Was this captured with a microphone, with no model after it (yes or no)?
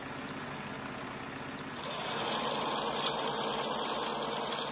yes